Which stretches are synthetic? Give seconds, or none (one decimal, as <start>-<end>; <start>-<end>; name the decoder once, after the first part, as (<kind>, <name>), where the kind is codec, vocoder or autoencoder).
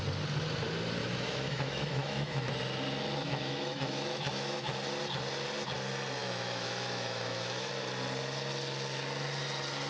1.0-2.5 (autoencoder, DAC-VAE); 3.2-4.7; 6.2-7.7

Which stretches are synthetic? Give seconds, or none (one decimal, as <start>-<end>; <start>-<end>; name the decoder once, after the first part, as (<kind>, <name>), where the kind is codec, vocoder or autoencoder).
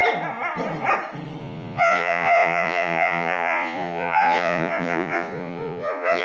1.4-6.2 (vocoder, Vocos)